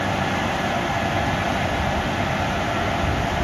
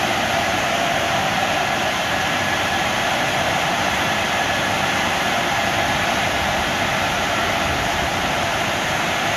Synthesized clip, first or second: second